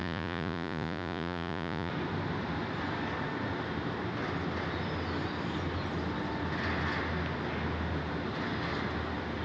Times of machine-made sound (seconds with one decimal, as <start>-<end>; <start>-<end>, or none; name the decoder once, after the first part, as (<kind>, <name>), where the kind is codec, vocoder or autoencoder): 0.0-1.9 (vocoder, Vocos)

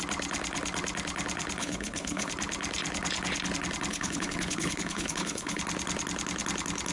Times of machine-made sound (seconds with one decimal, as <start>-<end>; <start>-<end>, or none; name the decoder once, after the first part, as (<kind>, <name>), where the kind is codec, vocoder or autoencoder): 1.6-2.3 (codec, HILCodec); 3.9-5.6